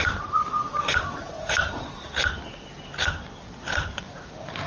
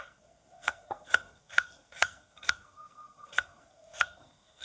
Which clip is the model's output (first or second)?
second